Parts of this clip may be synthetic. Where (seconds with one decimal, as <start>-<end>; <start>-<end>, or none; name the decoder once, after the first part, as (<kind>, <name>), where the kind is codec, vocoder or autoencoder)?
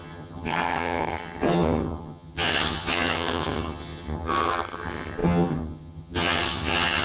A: 0.0-7.0 (vocoder, HiFi-GAN)